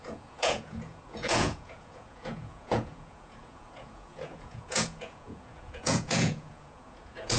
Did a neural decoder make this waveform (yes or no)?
yes